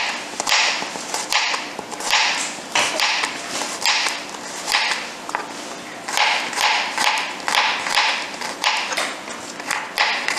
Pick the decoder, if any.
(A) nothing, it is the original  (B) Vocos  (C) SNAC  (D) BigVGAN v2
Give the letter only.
D